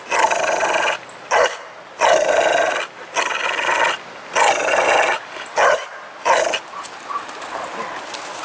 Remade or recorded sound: recorded